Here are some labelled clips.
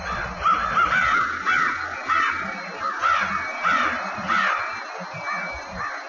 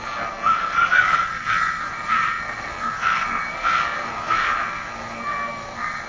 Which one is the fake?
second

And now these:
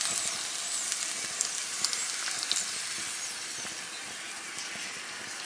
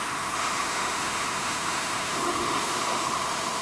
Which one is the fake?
second